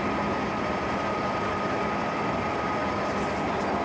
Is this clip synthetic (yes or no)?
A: no